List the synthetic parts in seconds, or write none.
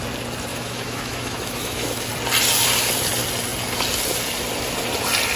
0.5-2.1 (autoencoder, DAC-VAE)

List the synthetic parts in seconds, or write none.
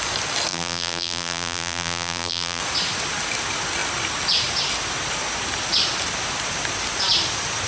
0.5-2.6 (vocoder, BigVGAN v2)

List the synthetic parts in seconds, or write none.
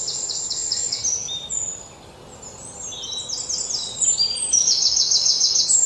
0.0-1.0 (codec, DAC); 4.5-5.9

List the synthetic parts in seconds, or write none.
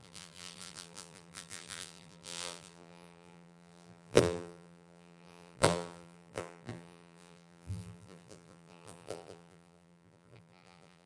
0.0-11.1 (vocoder, BigVGAN v2)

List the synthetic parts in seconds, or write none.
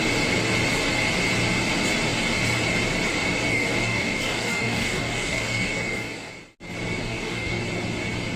3.5-6.3 (codec, DAC); 7.0-7.6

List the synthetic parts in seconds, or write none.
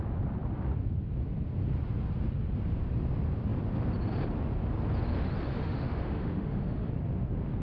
5.5-6.9 (autoencoder, DAC-VAE)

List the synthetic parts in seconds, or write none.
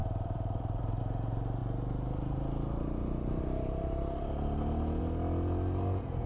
0.0-1.0 (vocoder, BigVGAN v2)